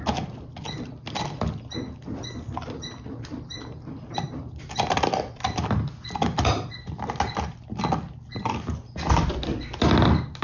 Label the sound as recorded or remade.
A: recorded